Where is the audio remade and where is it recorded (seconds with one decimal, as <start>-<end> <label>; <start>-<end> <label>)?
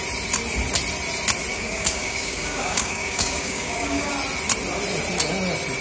0.0-1.5 recorded; 1.5-4.1 remade; 4.1-5.8 recorded